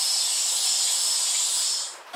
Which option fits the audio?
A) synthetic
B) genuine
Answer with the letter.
B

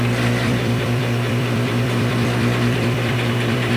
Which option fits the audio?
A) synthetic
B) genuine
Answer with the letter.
A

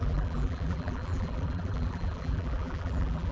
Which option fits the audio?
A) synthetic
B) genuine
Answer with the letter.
A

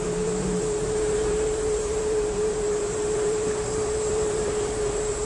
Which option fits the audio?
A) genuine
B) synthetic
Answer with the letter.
B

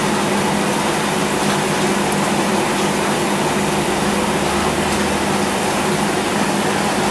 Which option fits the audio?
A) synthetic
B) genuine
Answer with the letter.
B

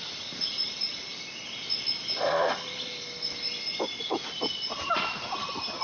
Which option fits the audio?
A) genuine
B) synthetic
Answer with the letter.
B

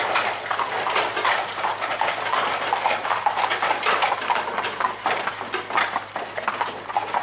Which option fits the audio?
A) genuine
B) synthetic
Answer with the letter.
A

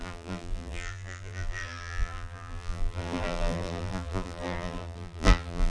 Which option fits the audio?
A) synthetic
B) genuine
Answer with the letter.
A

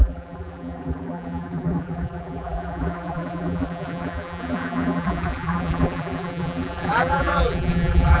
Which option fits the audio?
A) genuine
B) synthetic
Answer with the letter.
B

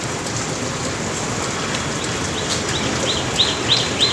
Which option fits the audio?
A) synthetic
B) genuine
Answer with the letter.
B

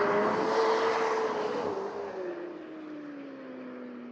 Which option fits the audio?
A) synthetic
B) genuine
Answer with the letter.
B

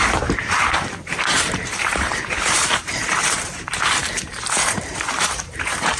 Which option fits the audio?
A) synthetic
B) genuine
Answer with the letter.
A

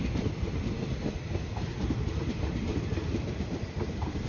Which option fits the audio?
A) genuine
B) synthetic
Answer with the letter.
A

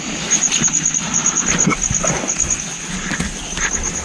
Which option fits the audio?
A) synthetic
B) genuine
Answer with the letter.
B